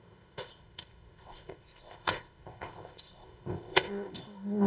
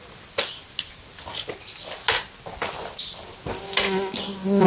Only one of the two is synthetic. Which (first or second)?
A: first